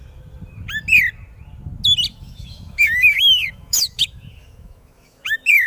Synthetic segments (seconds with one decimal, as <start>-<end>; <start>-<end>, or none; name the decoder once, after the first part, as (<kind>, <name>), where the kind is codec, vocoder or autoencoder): 2.1-5.7 (autoencoder, DAC-VAE)